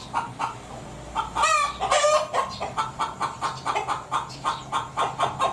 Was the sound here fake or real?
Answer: real